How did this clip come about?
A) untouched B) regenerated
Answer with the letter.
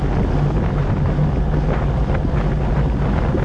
A